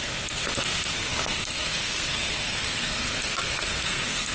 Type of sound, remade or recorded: remade